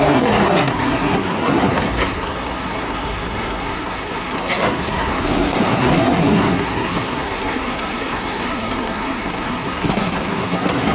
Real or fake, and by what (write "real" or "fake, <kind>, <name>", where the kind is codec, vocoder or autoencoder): fake, codec, SNAC